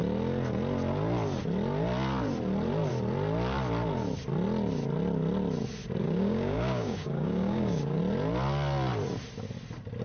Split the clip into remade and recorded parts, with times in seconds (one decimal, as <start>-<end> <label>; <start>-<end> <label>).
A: 0.0-6.0 recorded; 6.0-8.0 remade; 8.0-10.0 recorded